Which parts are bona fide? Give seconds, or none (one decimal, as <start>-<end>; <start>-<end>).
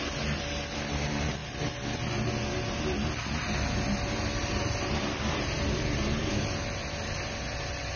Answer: 0.0-6.6; 7.6-8.0